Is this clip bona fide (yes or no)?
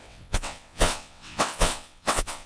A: no